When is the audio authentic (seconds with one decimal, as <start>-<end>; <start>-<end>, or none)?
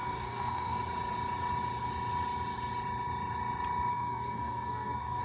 0.8-3.9